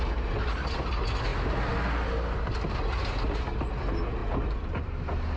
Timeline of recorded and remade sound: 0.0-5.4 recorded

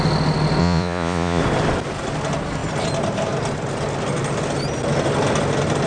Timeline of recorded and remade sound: 0.0-0.6 recorded; 0.6-1.4 remade; 1.4-5.9 recorded

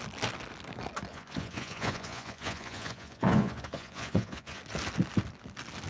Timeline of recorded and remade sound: 0.0-1.1 recorded; 1.1-4.6 remade; 4.6-5.9 recorded

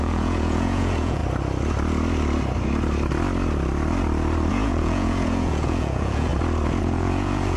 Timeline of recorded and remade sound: 0.0-1.2 remade; 1.2-4.5 recorded; 4.5-6.3 remade; 6.3-6.8 recorded; 6.8-7.6 remade

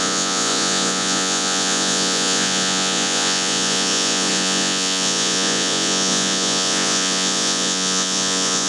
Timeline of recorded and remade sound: 0.0-8.7 remade

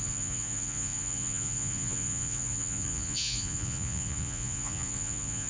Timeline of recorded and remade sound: 0.0-5.5 remade

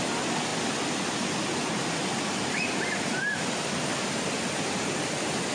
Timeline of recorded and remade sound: 0.0-5.5 recorded

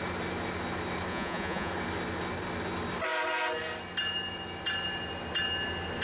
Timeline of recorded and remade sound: 0.0-1.1 recorded; 1.1-1.7 remade; 1.7-6.0 recorded